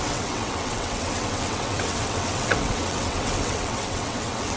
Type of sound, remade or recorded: remade